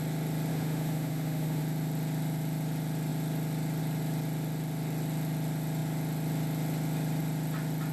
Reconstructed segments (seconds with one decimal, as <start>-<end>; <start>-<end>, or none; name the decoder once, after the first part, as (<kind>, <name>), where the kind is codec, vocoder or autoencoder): 0.5-1.6 (autoencoder, DAC-VAE)